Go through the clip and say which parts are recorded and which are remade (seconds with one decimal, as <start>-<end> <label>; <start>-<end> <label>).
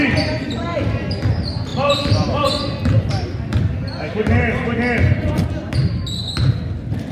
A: 0.0-1.7 recorded; 1.7-3.6 remade; 3.6-7.1 recorded